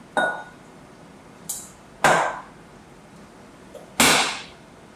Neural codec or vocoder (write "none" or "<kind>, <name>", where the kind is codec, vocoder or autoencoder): none